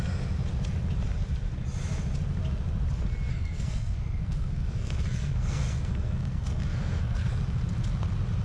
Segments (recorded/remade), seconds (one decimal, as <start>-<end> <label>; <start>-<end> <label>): 0.0-3.3 recorded; 3.3-7.3 remade; 7.3-8.4 recorded